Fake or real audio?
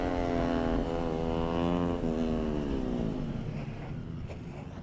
real